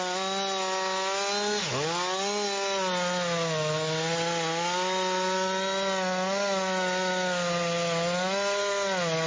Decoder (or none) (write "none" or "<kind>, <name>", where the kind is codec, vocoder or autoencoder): none